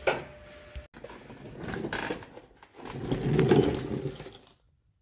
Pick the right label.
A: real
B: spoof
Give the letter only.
A